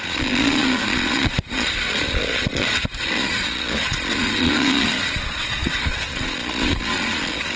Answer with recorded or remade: remade